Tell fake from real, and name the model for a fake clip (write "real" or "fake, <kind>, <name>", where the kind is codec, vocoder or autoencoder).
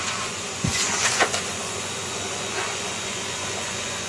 fake, vocoder, Vocos